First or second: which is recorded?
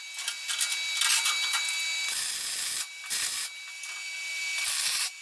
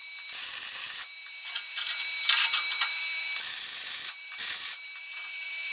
first